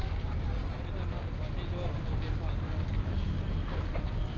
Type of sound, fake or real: real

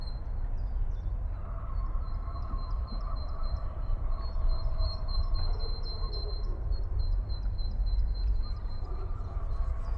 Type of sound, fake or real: fake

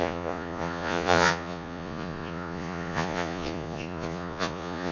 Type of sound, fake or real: fake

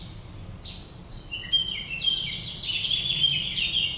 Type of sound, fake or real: real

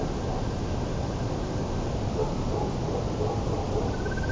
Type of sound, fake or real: real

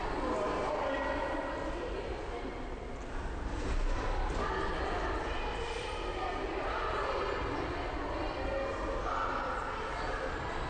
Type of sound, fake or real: real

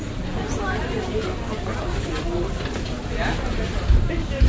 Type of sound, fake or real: real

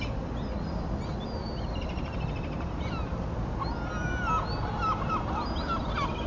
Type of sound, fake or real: real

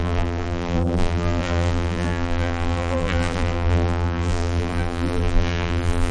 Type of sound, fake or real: fake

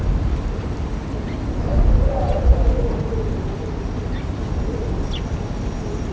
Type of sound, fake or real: real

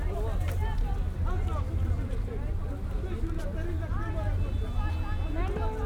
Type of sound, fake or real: real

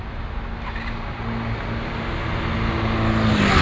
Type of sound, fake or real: real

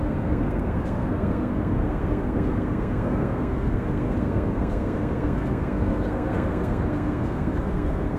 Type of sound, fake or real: fake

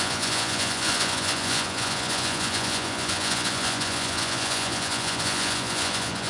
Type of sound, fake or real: fake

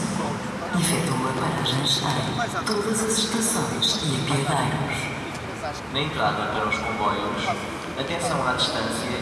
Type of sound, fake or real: real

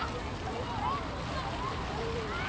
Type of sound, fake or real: real